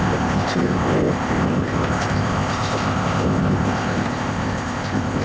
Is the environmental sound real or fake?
fake